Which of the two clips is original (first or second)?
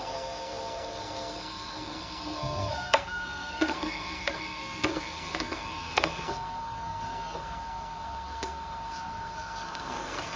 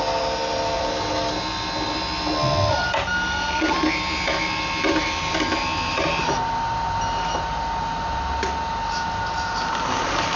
second